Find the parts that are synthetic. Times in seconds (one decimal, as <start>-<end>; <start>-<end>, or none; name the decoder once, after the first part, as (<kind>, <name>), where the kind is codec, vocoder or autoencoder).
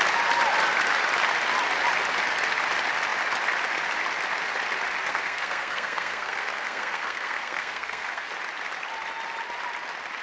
5.1-8.3 (codec, SNAC)